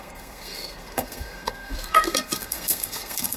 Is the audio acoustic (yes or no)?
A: no